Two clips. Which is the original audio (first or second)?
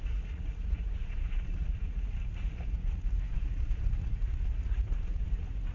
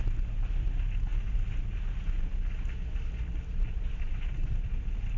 second